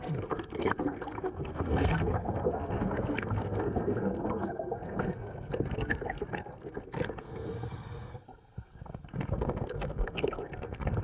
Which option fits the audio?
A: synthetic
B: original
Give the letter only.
A